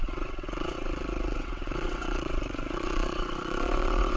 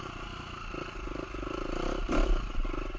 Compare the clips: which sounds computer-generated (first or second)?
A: first